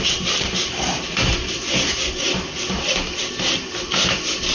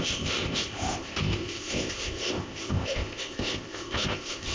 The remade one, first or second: second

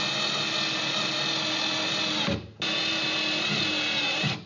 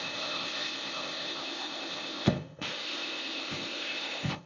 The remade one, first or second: second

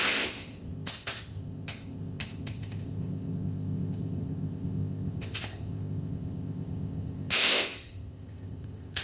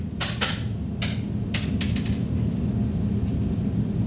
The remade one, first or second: first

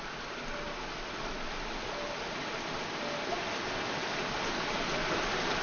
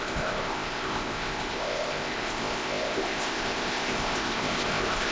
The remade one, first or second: second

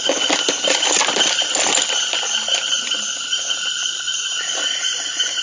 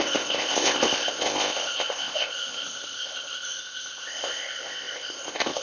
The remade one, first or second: second